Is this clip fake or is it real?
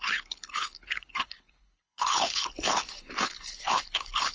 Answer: fake